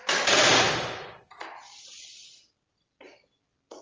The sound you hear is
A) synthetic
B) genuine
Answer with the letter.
B